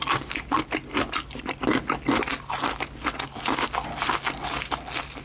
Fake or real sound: real